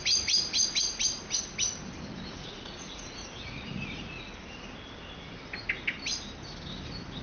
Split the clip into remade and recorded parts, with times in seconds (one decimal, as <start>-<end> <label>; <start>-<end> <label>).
0.0-2.4 recorded; 2.4-4.3 remade; 4.3-7.2 recorded